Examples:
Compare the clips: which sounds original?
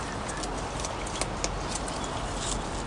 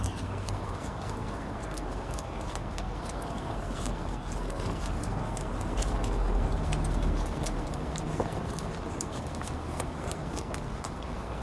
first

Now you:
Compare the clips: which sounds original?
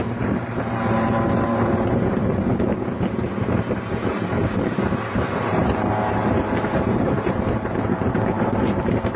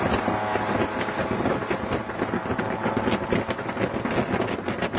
second